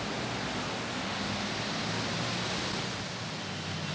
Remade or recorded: recorded